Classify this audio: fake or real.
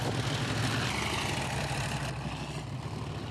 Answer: real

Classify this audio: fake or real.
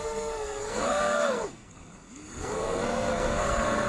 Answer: fake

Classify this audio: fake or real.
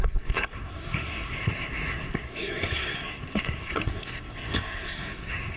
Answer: fake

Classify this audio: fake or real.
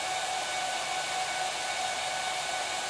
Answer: real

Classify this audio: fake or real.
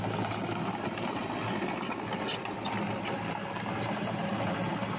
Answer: real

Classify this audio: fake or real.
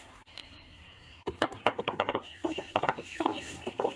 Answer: fake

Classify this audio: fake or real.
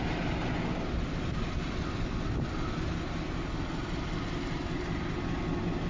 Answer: real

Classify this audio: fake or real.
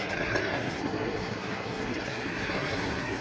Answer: fake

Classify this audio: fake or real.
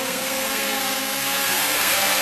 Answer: fake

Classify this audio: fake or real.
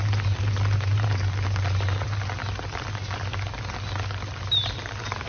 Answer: real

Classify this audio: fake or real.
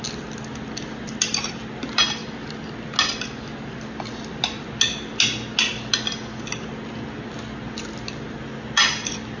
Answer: real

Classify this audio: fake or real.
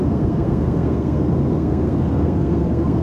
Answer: fake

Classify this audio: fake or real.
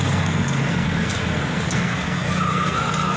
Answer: fake